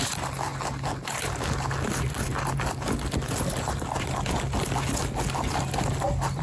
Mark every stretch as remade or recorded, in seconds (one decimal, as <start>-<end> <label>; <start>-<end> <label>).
0.0-6.4 recorded

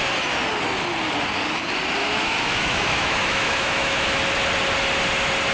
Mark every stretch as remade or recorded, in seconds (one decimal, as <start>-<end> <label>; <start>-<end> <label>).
0.0-2.0 recorded; 2.0-4.2 remade; 4.2-5.5 recorded

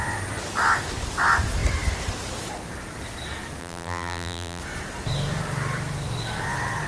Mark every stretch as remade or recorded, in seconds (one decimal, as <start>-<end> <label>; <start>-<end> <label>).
0.0-3.6 recorded; 3.6-4.6 remade; 4.6-6.9 recorded

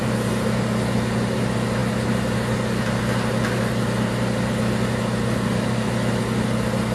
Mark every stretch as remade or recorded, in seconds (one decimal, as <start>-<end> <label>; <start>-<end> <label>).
0.0-6.9 recorded

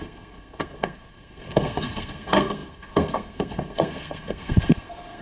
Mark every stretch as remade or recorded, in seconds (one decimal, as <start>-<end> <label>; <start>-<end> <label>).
0.0-5.2 remade

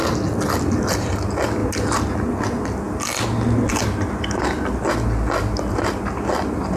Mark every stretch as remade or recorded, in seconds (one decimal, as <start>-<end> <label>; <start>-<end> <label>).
0.0-6.8 recorded

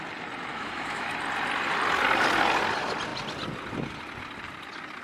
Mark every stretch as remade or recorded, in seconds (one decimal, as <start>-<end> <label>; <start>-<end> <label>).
0.0-0.5 recorded; 0.5-1.1 remade; 1.1-5.0 recorded

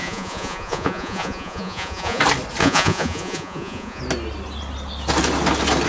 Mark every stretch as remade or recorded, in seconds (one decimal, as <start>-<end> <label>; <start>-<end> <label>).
0.0-2.2 remade; 2.2-2.6 recorded; 2.6-4.0 remade; 4.0-5.9 recorded